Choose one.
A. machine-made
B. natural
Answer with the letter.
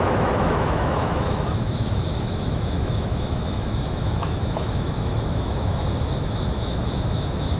A